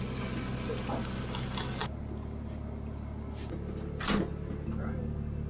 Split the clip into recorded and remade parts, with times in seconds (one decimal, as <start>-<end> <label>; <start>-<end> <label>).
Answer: 0.0-5.5 recorded